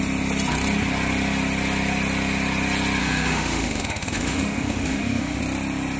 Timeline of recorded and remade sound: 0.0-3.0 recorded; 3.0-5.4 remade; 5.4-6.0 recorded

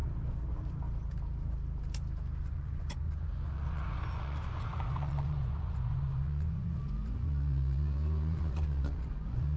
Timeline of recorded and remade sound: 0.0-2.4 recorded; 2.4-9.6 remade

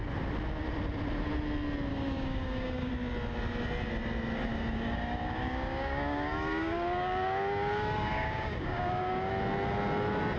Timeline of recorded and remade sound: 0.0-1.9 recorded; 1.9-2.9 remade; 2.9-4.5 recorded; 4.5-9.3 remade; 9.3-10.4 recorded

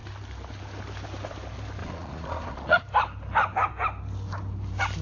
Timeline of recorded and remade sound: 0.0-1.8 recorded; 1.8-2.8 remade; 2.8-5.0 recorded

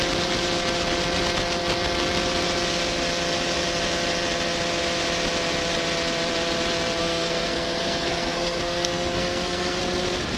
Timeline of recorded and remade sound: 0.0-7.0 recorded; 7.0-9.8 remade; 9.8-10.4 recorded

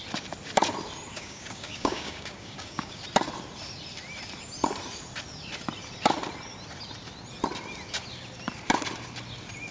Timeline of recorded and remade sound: 0.0-1.1 recorded; 1.1-3.0 remade; 3.0-9.7 recorded

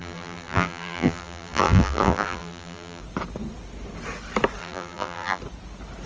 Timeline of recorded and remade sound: 0.0-3.0 remade; 3.0-4.6 recorded; 4.6-5.4 remade; 5.4-6.1 recorded

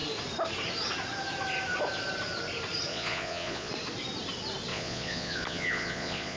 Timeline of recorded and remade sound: 0.0-2.9 recorded; 2.9-3.7 remade; 3.7-4.7 recorded; 4.7-6.4 remade